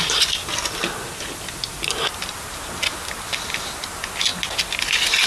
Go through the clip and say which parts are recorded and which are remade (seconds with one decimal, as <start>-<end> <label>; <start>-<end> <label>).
0.0-5.3 recorded